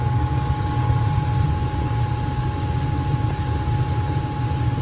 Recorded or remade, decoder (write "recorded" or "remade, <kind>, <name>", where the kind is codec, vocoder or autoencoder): recorded